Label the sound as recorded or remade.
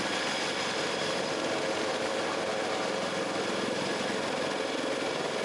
recorded